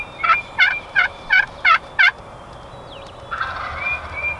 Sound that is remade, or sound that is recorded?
recorded